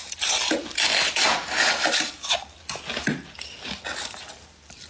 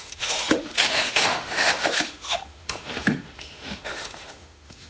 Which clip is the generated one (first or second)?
second